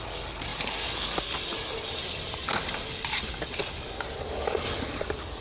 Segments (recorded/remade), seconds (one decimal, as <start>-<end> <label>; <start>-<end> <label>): 0.0-5.4 recorded